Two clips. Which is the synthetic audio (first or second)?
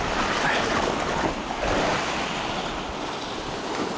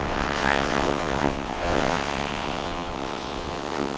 second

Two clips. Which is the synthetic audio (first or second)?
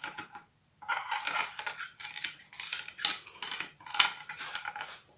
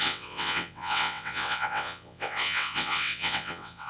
second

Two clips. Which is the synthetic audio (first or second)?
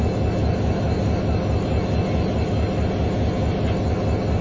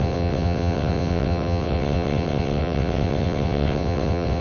second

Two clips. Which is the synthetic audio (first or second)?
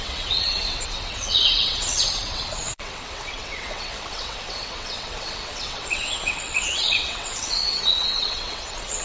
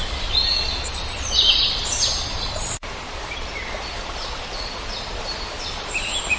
first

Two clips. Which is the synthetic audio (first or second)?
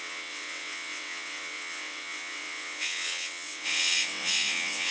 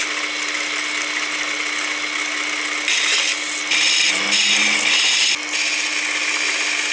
first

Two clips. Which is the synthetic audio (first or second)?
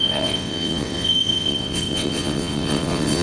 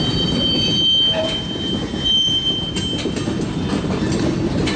first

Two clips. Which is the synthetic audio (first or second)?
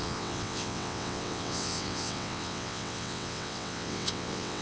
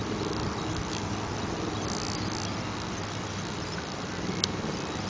first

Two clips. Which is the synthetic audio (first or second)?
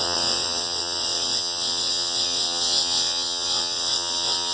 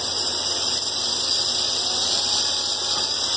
first